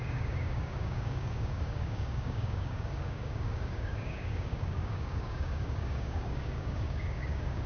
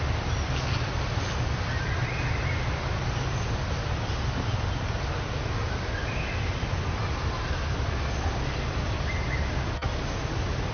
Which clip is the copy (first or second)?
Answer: first